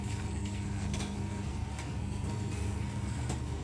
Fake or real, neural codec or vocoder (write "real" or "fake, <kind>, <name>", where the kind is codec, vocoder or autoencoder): fake, codec, SNAC